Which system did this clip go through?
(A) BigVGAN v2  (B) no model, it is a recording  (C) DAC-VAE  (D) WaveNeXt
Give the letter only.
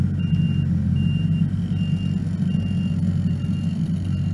B